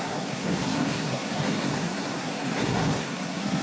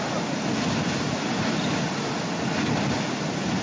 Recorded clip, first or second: second